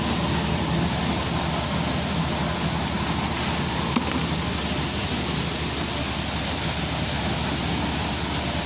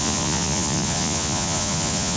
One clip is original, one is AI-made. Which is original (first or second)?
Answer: first